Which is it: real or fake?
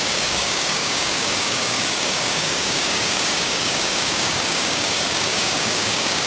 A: fake